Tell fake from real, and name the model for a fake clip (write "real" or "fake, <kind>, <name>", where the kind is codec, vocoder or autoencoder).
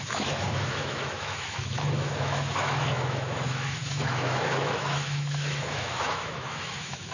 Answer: fake, autoencoder, DAC-VAE